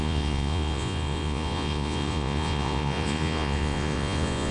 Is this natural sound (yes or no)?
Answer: no